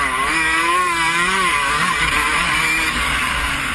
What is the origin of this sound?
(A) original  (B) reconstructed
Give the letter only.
B